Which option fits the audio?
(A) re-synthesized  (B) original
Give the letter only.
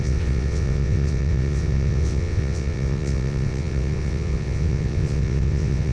A